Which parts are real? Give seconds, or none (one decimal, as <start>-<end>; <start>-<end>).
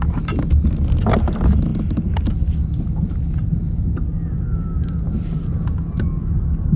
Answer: 0.0-6.8